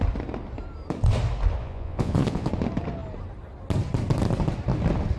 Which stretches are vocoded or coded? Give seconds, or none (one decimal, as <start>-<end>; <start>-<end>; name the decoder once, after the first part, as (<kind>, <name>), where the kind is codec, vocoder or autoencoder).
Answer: 1.6-2.5 (vocoder, Vocos)